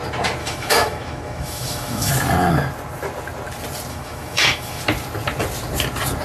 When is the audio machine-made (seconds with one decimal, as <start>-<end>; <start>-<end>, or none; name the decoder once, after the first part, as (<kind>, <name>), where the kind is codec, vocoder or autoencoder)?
0.4-2.1 (autoencoder, DAC-VAE); 3.9-4.8

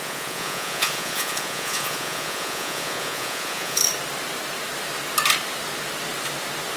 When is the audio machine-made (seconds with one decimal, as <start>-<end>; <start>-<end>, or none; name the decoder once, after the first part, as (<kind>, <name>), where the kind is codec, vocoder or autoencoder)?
0.0-3.8 (vocoder, Vocos)

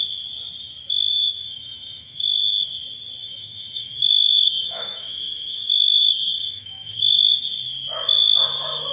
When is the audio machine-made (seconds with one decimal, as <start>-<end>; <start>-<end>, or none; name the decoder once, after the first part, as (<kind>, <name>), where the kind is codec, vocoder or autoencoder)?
1.1-2.2 (autoencoder, DAC-VAE); 3.2-7.3

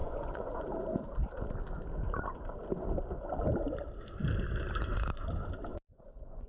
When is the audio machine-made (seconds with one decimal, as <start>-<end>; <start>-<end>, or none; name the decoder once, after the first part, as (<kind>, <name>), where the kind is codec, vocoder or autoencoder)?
0.0-0.6 (vocoder, Vocos); 5.7-6.5

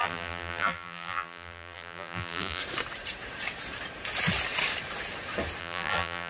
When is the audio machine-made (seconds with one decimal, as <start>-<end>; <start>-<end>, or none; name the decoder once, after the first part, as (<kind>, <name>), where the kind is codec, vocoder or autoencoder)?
0.0-2.6 (vocoder, BigVGAN v2); 5.6-6.3

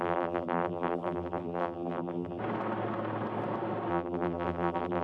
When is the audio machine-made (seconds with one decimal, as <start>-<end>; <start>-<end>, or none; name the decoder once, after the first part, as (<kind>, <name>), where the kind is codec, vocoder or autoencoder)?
0.0-2.4 (vocoder, BigVGAN v2); 3.9-5.0

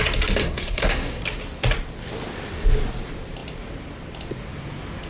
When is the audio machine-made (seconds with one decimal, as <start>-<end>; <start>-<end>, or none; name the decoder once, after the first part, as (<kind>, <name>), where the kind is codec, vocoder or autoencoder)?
0.4-1.2 (codec, SNAC)

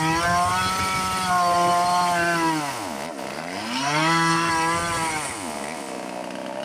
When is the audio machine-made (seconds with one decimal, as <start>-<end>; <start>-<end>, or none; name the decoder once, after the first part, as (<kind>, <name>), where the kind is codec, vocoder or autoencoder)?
3.3-4.5 (codec, SNAC)